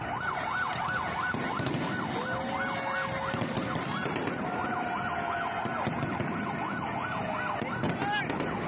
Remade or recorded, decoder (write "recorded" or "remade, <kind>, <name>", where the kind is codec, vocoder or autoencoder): recorded